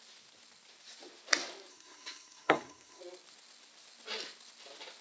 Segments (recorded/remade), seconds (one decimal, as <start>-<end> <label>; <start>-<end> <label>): 0.0-1.7 recorded; 1.7-3.0 remade; 3.0-5.0 recorded